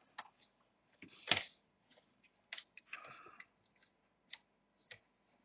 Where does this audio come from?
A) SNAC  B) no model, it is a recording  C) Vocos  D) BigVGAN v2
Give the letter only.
B